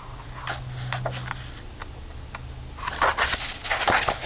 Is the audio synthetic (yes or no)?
no